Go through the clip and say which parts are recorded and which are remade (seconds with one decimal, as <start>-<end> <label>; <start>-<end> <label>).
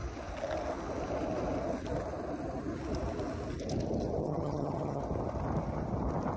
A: 0.0-4.2 recorded; 4.2-5.0 remade; 5.0-6.4 recorded